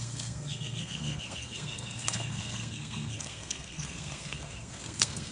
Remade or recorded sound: remade